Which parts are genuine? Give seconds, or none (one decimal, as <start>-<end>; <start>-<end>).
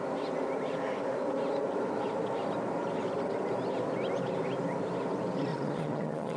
0.0-5.5